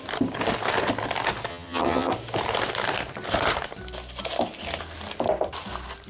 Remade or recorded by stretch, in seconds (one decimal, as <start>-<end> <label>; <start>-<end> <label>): 0.0-1.5 recorded; 1.5-2.1 remade; 2.1-6.1 recorded